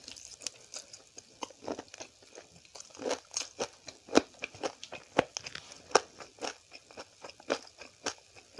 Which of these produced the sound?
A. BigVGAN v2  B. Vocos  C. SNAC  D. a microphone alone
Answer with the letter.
D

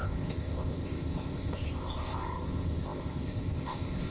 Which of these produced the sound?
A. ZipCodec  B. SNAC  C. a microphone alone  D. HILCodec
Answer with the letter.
A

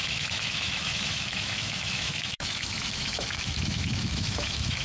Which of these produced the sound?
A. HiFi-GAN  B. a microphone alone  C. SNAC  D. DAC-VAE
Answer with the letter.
D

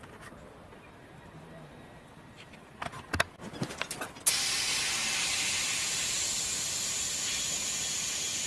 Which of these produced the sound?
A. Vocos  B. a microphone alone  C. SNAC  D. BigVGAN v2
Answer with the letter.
B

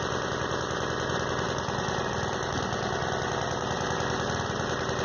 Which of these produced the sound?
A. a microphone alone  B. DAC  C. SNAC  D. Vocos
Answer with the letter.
A